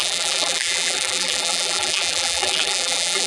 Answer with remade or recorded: remade